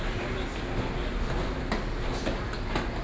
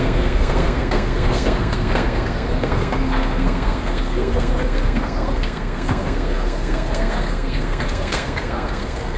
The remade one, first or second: second